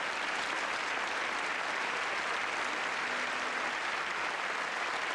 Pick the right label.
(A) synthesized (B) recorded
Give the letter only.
B